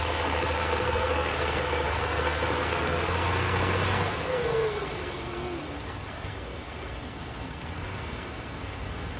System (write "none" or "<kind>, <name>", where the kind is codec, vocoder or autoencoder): codec, SNAC